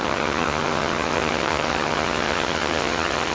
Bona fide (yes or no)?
no